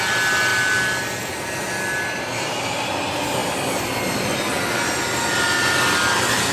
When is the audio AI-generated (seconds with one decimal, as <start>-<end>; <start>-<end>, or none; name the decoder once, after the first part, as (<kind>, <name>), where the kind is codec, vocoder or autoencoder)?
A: none